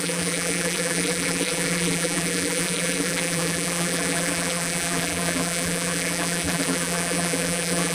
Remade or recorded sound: remade